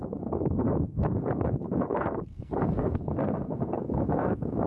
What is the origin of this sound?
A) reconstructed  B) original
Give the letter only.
A